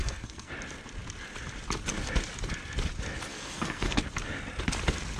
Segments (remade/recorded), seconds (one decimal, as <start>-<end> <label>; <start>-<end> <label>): 0.0-0.5 remade; 0.5-3.3 recorded; 3.3-4.0 remade; 4.0-5.2 recorded